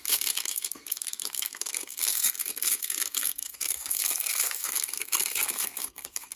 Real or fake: fake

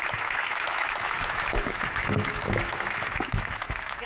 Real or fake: fake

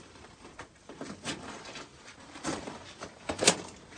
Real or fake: fake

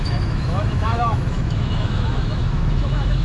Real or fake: fake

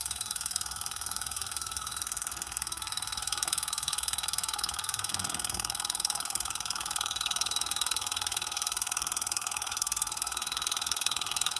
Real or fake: fake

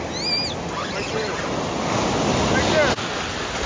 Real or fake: real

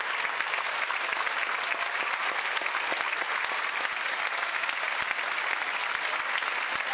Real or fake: real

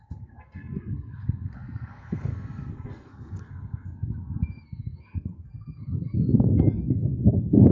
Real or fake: fake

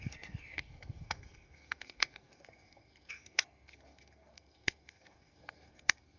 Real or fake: fake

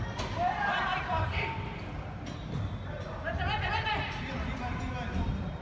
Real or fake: real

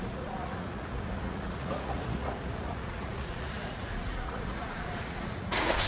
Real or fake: fake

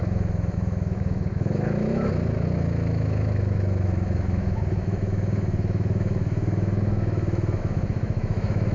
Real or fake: fake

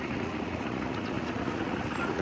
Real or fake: fake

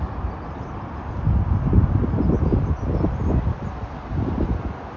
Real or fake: real